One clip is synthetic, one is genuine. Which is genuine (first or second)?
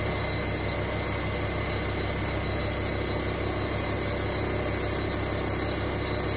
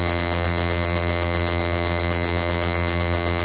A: first